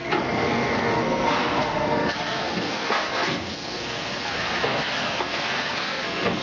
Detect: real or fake fake